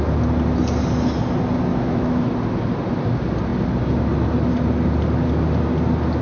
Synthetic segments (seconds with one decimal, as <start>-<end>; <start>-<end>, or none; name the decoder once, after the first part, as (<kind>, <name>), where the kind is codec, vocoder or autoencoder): 1.7-2.3 (autoencoder, DAC-VAE)